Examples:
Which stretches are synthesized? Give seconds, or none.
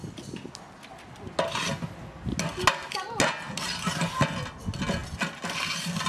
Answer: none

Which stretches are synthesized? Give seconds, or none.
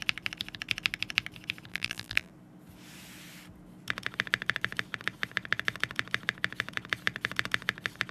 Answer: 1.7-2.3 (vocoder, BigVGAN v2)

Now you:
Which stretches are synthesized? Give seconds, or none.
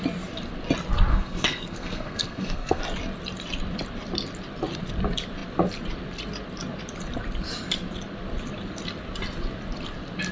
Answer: 1.1-2.8 (codec, SNAC)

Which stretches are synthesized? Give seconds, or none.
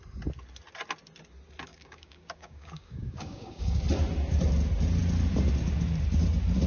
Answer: 1.7-3.8 (codec, DAC)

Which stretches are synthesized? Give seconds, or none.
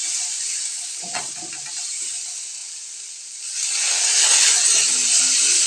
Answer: 0.7-1.4 (vocoder, WaveNeXt)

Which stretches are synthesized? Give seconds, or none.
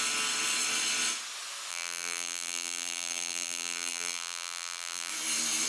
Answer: 1.7-5.1 (vocoder, BigVGAN v2)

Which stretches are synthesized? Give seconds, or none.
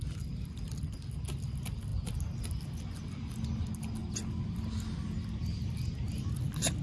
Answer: none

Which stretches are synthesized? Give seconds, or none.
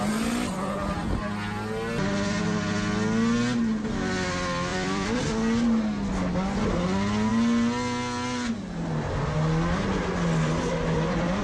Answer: 4.7-5.2 (vocoder, BigVGAN v2)